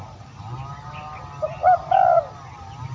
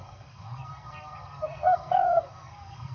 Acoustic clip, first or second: first